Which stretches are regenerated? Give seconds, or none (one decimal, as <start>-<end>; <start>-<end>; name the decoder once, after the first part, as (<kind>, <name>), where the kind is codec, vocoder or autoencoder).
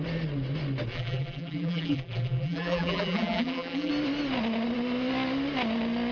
0.9-3.9 (vocoder, BigVGAN v2)